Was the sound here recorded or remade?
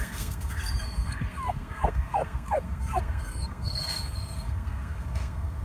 remade